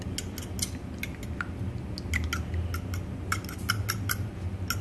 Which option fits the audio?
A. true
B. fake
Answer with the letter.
A